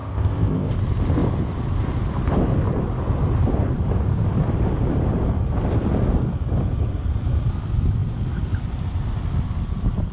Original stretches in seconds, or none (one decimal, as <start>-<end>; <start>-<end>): 0.7-10.1